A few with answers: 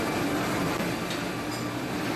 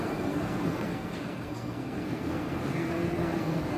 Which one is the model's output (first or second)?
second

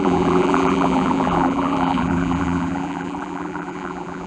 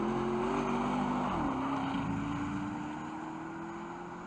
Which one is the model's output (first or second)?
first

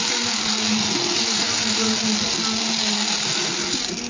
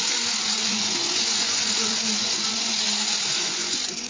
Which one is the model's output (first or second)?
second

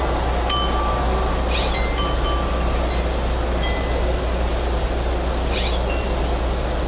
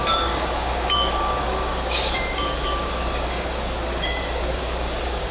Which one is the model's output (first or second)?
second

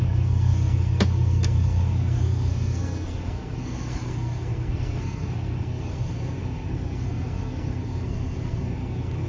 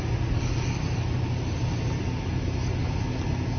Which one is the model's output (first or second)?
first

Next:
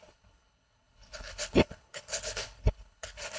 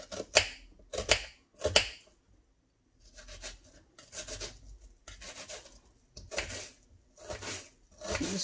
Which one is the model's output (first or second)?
first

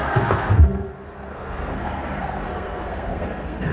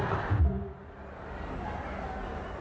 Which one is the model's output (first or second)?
first